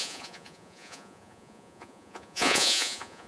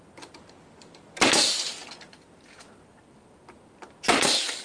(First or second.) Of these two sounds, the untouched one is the second